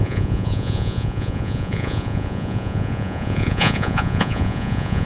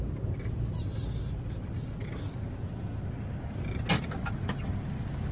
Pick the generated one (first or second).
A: first